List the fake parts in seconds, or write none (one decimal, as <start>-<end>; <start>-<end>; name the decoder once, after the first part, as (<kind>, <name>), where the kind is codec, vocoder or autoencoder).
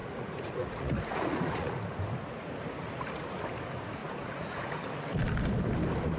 0.0-1.8 (vocoder, Vocos); 2.8-3.4; 4.0-4.8